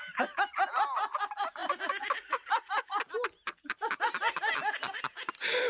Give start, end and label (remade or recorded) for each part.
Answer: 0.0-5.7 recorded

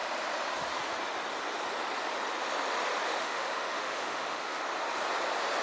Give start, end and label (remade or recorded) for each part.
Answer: 0.0-3.1 recorded; 3.1-4.6 remade; 4.6-5.6 recorded

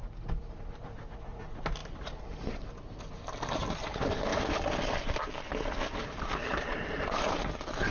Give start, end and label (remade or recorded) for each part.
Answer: 0.0-4.3 recorded; 4.3-5.2 remade; 5.2-6.7 recorded; 6.7-7.5 remade; 7.5-7.9 recorded

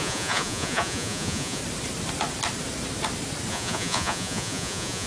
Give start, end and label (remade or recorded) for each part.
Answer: 0.0-1.6 remade; 1.6-3.5 recorded; 3.5-5.1 remade

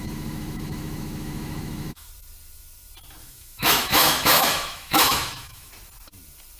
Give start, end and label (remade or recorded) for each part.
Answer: 0.0-2.1 remade; 2.1-3.2 recorded; 3.2-5.7 remade; 5.7-6.6 recorded

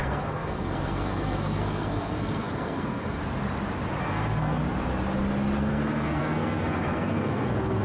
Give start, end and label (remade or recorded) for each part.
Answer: 0.0-3.2 remade; 3.2-4.0 recorded; 4.0-4.6 remade; 4.6-5.6 recorded; 5.6-7.8 remade